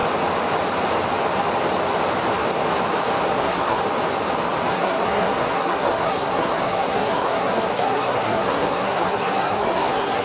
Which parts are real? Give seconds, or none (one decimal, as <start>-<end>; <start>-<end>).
0.0-3.3; 3.8-4.7